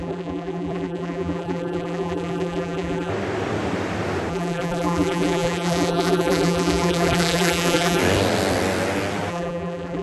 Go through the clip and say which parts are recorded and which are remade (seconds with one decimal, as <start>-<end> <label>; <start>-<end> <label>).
0.0-3.1 remade; 3.1-4.3 recorded; 4.3-8.0 remade; 8.0-9.3 recorded; 9.3-10.0 remade